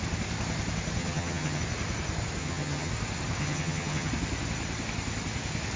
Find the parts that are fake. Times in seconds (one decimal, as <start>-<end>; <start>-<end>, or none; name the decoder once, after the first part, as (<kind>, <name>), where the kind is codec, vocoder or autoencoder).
1.0-1.6 (vocoder, HiFi-GAN); 2.4-2.9; 3.4-4.1